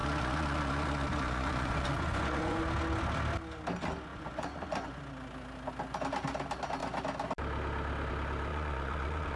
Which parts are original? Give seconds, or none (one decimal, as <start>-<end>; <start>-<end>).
2.6-4.1; 5.0-8.5